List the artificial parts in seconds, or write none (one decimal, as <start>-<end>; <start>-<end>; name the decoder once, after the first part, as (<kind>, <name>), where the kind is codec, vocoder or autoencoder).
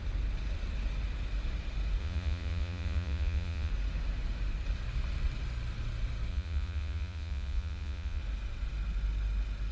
2.0-3.7 (vocoder, Vocos); 6.3-8.2